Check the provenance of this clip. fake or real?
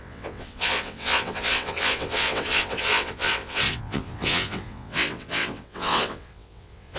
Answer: fake